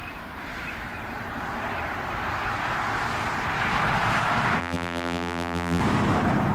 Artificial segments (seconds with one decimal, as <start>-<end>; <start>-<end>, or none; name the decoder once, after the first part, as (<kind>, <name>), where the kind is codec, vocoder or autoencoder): 4.6-5.8 (vocoder, BigVGAN v2)